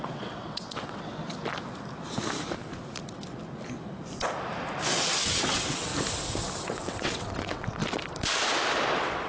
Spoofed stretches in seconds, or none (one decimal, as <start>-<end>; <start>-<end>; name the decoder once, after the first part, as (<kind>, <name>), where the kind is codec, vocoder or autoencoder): 0.0-1.2 (vocoder, WaveNeXt); 5.0-5.9; 6.6-7.8; 8.9-9.3